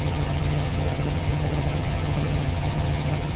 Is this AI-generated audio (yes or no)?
yes